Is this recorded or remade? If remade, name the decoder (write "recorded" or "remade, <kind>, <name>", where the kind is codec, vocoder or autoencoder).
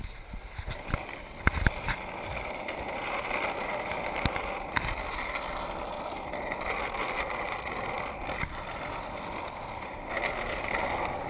recorded